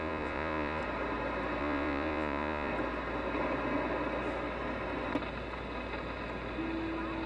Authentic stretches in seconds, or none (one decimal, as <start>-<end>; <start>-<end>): 0.8-1.6; 2.7-7.3